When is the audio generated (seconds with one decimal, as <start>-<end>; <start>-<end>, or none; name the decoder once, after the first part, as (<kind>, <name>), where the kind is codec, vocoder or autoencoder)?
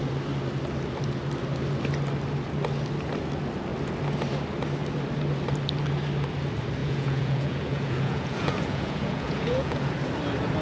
6.8-9.9 (vocoder, Vocos)